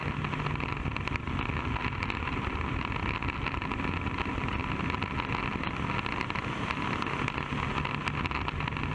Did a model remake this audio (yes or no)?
no